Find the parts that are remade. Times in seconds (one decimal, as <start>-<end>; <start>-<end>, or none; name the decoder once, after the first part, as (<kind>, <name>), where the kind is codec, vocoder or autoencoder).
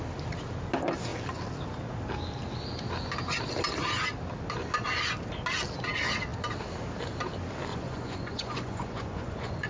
7.7-9.7 (vocoder, Vocos)